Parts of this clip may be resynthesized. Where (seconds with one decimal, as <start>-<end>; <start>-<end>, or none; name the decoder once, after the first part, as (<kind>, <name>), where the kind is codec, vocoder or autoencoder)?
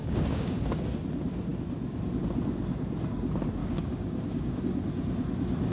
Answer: 0.0-0.6 (codec, DAC); 3.6-4.6